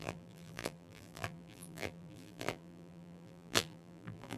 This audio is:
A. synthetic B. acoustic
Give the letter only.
A